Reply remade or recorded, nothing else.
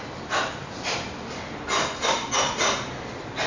recorded